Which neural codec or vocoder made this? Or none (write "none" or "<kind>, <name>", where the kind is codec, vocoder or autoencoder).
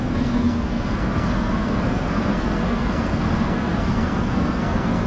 codec, SNAC